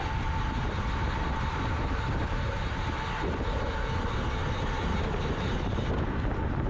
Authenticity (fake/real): real